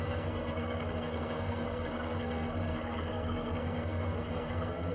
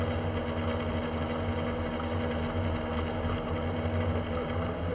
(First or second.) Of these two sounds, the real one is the second